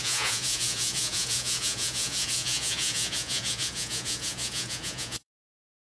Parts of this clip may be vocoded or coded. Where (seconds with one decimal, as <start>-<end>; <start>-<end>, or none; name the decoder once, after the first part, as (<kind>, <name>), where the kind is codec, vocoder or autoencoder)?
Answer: 0.0-5.9 (vocoder, Vocos)